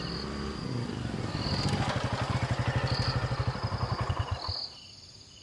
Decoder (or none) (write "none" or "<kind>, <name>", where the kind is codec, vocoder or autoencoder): none